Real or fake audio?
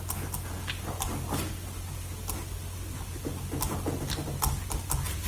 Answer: real